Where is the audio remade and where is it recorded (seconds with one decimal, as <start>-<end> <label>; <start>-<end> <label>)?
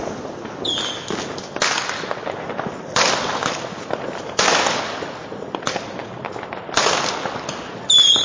0.0-8.2 recorded